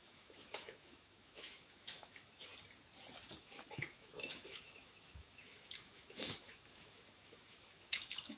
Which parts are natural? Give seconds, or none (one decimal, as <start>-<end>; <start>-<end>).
2.5-3.4

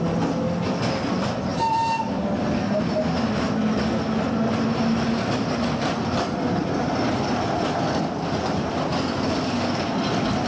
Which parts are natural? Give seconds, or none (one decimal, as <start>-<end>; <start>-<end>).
0.0-10.5

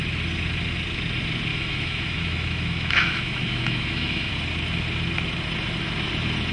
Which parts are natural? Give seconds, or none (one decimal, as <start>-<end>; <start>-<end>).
0.0-1.5; 4.3-6.5

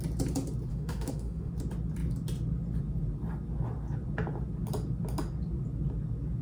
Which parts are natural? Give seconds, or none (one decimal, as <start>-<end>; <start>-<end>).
0.0-0.7; 1.5-6.4

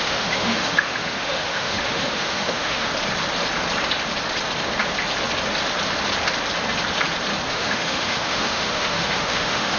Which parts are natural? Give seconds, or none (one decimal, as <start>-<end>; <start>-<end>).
2.9-7.5

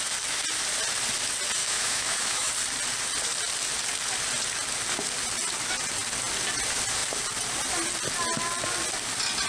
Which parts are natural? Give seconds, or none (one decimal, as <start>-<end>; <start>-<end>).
0.0-1.6; 2.5-9.5

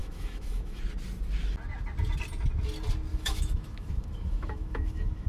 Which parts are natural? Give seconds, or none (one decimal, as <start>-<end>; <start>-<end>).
0.8-3.1

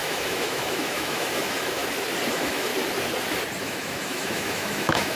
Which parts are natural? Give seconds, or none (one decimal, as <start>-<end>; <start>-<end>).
1.8-2.3; 2.7-3.6